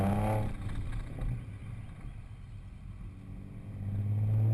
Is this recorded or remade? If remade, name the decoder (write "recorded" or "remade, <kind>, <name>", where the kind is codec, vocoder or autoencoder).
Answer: recorded